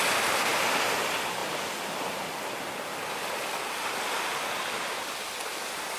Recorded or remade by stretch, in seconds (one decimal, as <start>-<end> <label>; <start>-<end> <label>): 0.0-6.0 recorded